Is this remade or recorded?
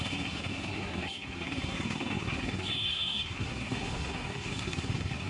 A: remade